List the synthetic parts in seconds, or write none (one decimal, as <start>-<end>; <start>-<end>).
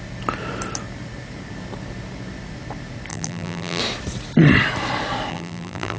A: 3.1-3.8; 5.3-6.0